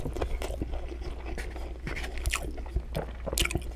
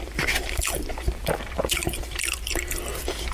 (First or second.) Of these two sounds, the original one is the first